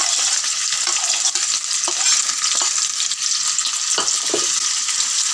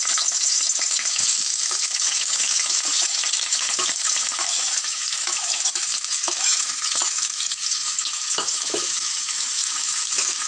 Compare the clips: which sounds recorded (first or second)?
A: first